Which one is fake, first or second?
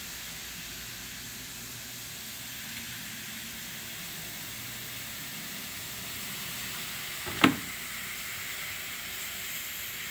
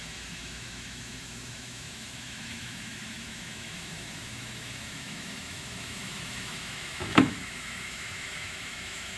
second